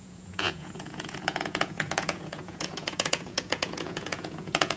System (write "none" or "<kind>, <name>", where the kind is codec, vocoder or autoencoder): vocoder, Vocos